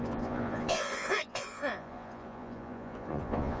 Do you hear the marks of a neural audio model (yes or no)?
yes